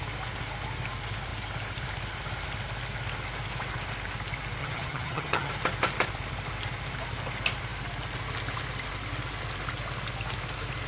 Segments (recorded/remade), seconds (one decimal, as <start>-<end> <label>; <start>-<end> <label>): 0.0-4.6 recorded; 4.6-5.5 remade; 5.5-10.9 recorded

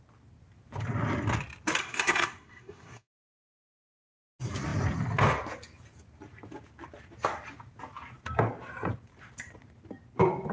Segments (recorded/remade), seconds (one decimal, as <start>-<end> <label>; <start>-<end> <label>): 0.0-1.8 recorded; 1.8-3.1 remade; 3.1-10.5 recorded

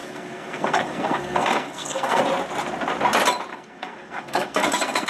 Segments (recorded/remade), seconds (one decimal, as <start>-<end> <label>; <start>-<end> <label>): 0.0-2.2 remade; 2.2-3.5 recorded; 3.5-5.1 remade

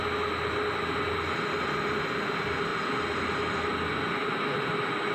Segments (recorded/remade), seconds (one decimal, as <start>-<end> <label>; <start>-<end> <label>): 0.0-5.1 recorded